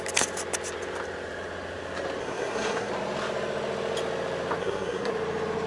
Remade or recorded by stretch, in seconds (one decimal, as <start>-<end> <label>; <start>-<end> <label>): 0.0-2.2 recorded; 2.2-2.9 remade; 2.9-4.6 recorded; 4.6-5.1 remade; 5.1-5.7 recorded